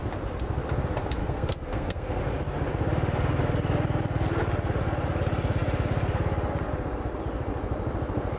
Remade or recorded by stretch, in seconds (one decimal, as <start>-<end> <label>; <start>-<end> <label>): 0.0-1.2 recorded; 1.2-2.2 remade; 2.2-8.4 recorded